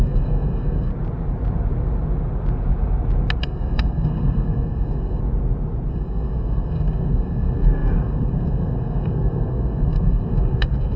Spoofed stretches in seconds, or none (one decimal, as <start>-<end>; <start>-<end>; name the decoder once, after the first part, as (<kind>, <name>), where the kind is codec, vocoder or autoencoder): 0.0-0.9 (codec, SNAC); 3.4-5.2; 5.9-11.0